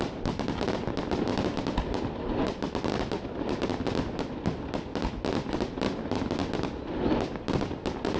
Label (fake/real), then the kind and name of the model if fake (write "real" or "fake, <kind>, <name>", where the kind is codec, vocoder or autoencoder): real